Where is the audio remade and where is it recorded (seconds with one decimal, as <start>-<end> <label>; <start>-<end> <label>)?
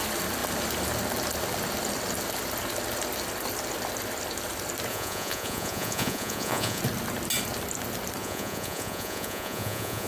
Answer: 0.0-4.9 recorded; 4.9-6.8 remade; 6.8-8.2 recorded; 8.2-10.1 remade